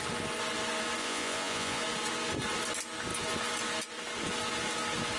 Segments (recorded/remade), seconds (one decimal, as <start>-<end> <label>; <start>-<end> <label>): 0.0-1.0 recorded; 1.0-1.8 remade; 1.8-5.2 recorded